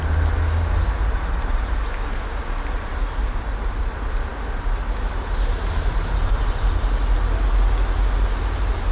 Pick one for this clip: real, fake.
real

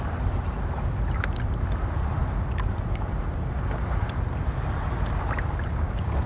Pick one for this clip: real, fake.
real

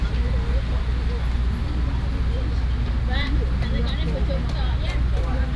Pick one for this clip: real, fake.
real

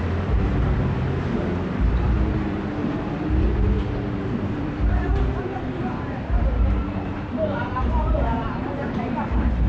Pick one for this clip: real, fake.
fake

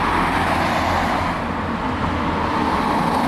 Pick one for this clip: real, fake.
real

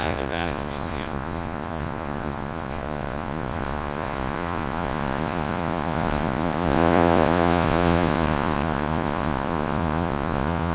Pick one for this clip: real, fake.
fake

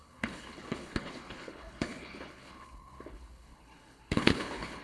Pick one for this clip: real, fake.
fake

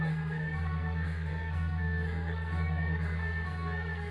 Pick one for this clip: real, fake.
fake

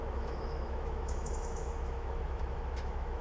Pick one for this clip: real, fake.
fake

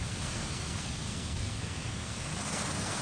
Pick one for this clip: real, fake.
fake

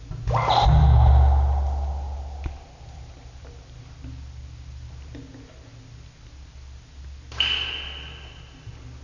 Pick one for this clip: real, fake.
real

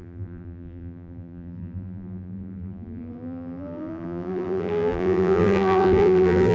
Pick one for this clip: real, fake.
fake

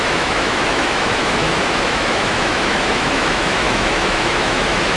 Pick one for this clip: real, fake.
fake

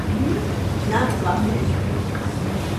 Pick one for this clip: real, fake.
real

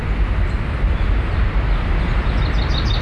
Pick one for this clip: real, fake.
real